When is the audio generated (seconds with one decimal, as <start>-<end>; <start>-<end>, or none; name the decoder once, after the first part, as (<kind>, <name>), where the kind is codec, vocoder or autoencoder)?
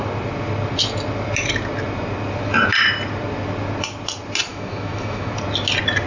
4.5-5.3 (autoencoder, DAC-VAE)